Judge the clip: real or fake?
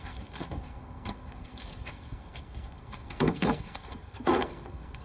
fake